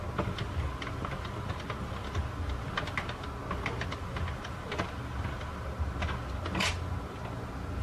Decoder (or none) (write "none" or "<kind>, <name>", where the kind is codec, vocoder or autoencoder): none